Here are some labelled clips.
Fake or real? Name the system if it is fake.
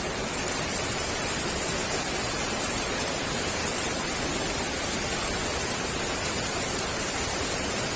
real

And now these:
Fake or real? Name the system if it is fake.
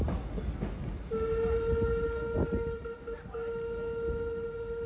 real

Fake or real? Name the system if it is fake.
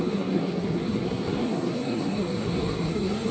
fake, codec, SNAC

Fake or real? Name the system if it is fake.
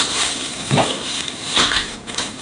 fake, codec, SNAC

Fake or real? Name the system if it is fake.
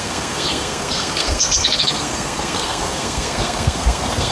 fake, codec, SNAC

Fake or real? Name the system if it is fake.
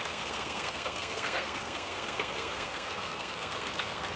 fake, codec, SNAC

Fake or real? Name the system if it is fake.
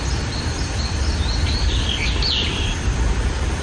real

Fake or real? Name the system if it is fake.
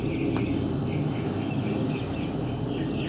real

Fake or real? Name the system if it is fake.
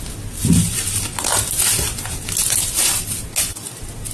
real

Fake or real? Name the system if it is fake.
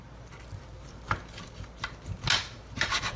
real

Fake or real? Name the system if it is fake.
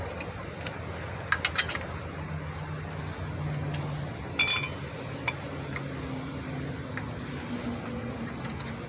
real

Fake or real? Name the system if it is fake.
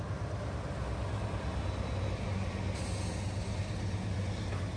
real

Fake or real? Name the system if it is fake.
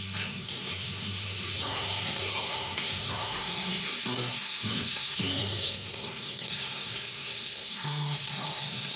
fake, codec, SNAC